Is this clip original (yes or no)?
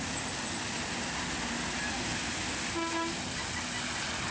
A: yes